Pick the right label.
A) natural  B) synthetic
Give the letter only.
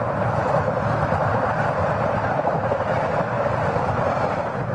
A